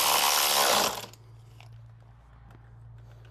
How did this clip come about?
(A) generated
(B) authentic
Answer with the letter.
B